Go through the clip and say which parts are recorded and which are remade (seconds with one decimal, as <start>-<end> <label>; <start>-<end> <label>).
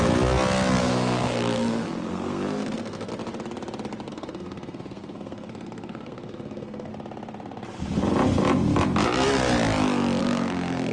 0.0-0.8 recorded; 0.8-3.1 remade; 3.1-4.1 recorded; 4.1-6.9 remade; 6.9-10.2 recorded; 10.2-10.9 remade